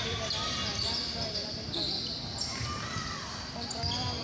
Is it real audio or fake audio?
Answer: real